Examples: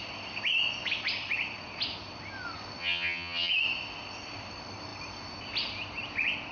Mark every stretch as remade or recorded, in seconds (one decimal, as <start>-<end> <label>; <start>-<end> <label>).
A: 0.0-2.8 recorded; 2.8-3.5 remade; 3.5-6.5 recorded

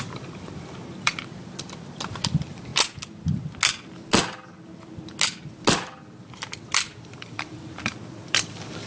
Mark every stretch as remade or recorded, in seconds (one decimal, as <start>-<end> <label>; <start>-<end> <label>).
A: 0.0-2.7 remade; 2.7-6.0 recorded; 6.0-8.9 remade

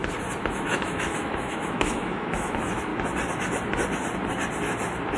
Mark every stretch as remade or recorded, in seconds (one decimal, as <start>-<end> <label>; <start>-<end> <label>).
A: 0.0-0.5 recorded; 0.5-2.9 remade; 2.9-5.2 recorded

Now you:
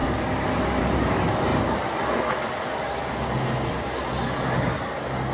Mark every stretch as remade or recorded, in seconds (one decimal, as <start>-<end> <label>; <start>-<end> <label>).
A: 0.0-5.3 recorded

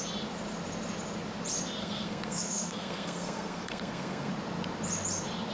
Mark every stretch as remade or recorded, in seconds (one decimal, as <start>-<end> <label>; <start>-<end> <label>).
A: 0.0-1.8 recorded; 1.8-4.3 remade; 4.3-5.5 recorded

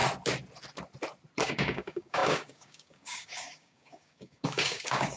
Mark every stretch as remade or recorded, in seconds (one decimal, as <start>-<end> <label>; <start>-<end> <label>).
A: 0.0-1.4 recorded; 1.4-5.2 remade